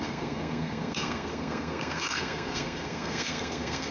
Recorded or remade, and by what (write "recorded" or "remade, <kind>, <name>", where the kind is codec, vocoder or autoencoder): remade, codec, SNAC